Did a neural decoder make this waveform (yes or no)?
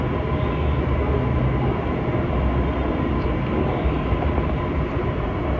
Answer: no